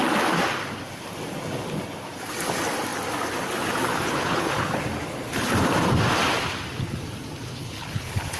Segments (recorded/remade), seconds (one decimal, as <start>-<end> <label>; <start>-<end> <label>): 0.0-3.9 recorded; 3.9-4.8 remade; 4.8-7.6 recorded; 7.6-8.4 remade